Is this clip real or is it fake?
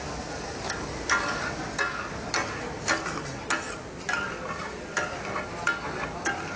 real